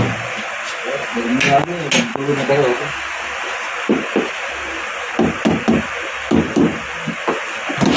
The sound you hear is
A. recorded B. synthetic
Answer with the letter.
A